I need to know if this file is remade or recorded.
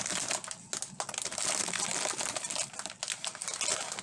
recorded